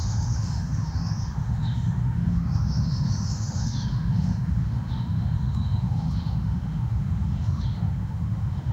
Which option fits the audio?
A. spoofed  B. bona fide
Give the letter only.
A